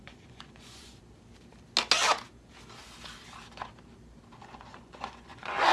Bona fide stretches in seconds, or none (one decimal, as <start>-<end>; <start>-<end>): 1.0-4.4